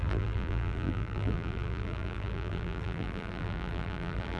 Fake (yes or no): yes